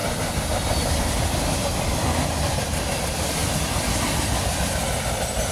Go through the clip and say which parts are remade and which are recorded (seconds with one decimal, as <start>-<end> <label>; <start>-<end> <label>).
0.0-5.5 recorded